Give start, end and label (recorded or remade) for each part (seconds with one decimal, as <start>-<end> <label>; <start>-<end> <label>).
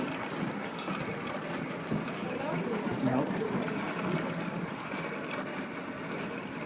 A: 0.0-6.7 recorded